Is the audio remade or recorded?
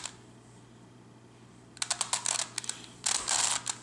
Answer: recorded